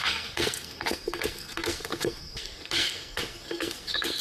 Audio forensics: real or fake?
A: fake